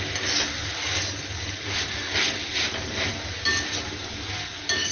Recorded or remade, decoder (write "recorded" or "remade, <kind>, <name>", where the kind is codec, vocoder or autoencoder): recorded